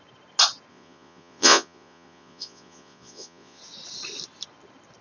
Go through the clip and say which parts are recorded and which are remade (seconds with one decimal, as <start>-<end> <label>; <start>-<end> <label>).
0.0-0.7 recorded; 0.7-3.6 remade; 3.6-5.0 recorded